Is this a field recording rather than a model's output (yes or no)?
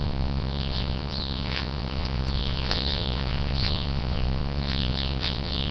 no